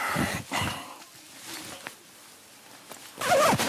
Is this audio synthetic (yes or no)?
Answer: no